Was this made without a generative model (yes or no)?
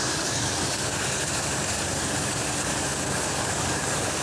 no